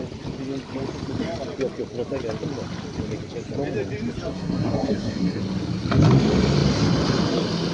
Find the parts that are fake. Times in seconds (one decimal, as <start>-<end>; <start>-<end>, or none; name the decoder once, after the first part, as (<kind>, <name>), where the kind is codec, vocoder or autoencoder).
4.3-5.4 (codec, SNAC)